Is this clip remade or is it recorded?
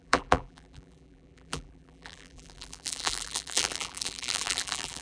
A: remade